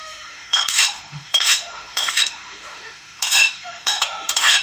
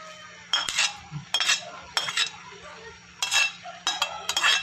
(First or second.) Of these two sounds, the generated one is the first